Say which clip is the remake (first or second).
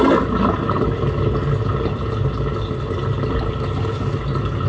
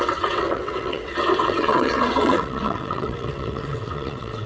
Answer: second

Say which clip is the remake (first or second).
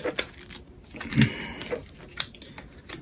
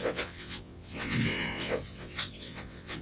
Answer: second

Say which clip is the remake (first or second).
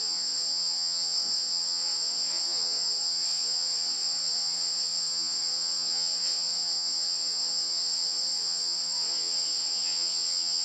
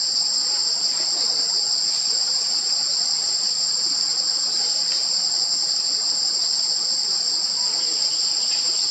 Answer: first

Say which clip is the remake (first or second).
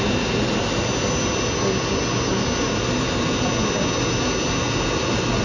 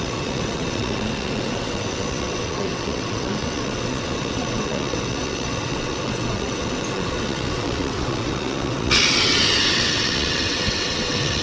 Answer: second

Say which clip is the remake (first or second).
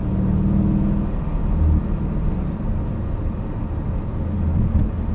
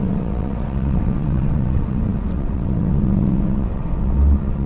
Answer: second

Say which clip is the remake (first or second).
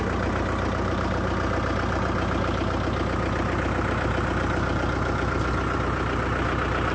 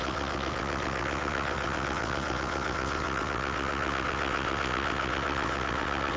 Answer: second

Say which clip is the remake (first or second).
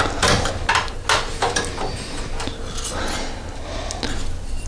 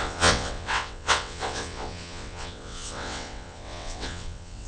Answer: second